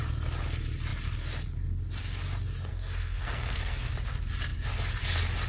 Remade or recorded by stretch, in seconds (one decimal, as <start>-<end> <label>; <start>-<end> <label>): 0.0-2.7 recorded; 2.7-3.9 remade; 3.9-5.5 recorded